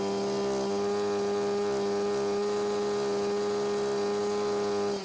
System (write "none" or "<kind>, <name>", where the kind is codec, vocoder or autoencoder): none